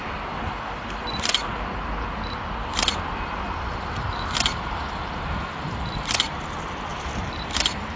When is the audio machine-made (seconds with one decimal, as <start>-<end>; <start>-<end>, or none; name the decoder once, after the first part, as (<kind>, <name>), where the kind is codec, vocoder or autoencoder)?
6.9-8.0 (vocoder, BigVGAN v2)